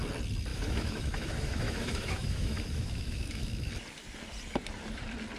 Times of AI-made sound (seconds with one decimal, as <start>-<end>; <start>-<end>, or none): 0.5-3.7